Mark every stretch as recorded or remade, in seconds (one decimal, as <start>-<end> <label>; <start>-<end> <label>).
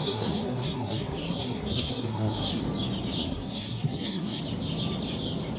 0.0-2.6 remade; 2.6-3.2 recorded; 3.2-4.4 remade; 4.4-5.6 recorded